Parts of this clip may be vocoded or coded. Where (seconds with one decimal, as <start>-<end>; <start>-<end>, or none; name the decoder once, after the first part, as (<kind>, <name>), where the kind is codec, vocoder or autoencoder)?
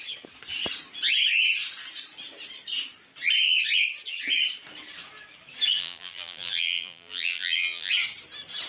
5.8-7.9 (vocoder, BigVGAN v2)